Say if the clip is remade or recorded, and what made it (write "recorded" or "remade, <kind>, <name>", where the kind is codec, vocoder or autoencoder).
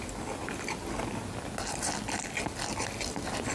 recorded